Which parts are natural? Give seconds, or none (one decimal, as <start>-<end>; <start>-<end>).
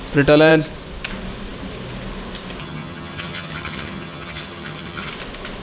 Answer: 0.0-2.6; 5.1-5.6